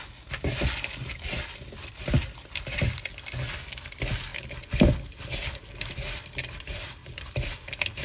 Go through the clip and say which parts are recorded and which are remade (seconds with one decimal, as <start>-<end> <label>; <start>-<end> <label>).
0.0-8.0 recorded